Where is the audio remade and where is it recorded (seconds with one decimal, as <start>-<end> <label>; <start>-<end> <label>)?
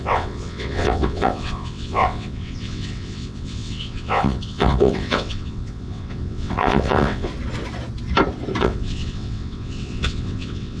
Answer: 0.0-7.3 remade; 7.3-8.6 recorded; 8.6-10.8 remade